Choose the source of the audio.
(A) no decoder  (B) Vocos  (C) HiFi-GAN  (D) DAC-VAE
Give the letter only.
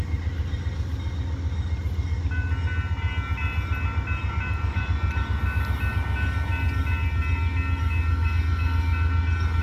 A